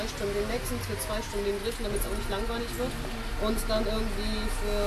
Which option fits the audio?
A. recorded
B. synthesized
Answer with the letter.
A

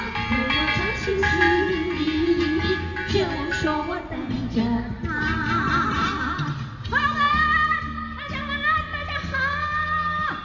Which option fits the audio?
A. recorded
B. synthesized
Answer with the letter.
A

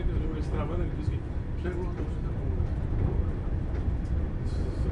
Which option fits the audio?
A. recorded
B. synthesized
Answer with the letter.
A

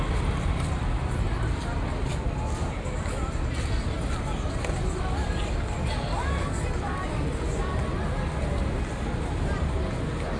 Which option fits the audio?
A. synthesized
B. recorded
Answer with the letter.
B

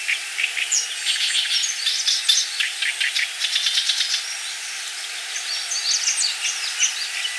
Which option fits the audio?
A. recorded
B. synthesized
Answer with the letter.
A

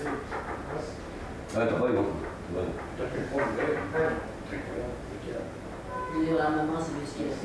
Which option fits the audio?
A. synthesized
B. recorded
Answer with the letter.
B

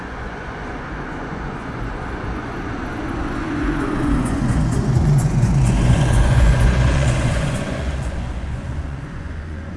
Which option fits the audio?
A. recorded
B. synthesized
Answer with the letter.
B